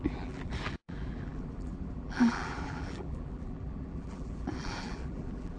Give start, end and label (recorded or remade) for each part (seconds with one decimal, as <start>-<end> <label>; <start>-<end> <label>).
0.0-5.6 remade